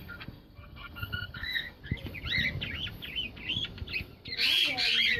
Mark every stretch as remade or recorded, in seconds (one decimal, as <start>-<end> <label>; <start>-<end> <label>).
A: 0.0-1.8 remade; 1.8-5.2 recorded